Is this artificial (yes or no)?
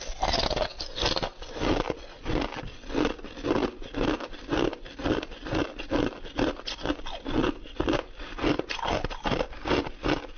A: no